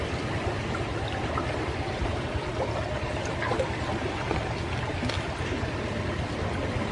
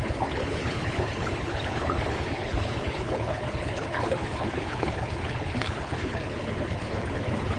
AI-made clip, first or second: second